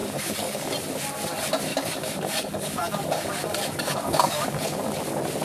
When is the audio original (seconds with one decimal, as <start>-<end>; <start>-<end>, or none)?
0.7-1.7; 4.9-5.4